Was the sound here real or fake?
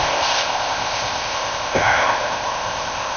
fake